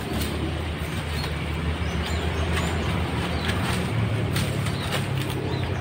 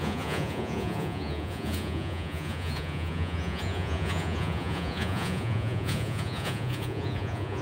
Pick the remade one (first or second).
second